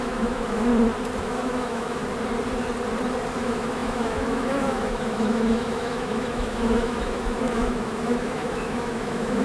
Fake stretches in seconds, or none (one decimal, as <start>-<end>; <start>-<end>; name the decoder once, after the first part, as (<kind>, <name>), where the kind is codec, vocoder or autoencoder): 0.0-0.7 (autoencoder, DAC-VAE); 1.2-2.0; 3.4-9.4